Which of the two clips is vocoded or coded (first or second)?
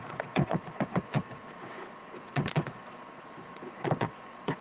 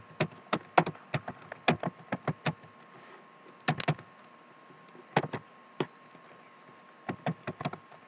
first